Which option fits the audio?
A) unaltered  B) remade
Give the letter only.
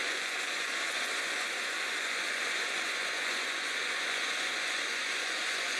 B